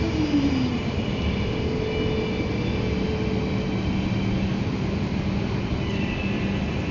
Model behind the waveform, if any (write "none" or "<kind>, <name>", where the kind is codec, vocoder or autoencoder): none